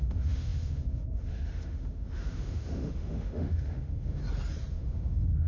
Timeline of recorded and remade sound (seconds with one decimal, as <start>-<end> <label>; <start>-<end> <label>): 0.0-4.2 remade; 4.2-4.7 recorded; 4.7-5.5 remade